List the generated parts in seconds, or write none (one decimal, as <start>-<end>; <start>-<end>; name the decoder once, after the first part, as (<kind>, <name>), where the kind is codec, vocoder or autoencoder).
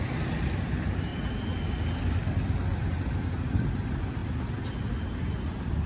none